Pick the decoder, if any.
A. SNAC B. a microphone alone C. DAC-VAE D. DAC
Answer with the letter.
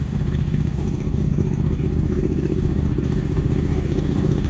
D